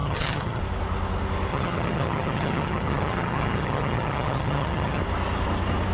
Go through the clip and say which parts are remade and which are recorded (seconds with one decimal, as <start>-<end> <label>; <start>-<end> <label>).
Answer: 0.0-0.6 remade; 0.6-1.5 recorded; 1.5-5.0 remade; 5.0-5.9 recorded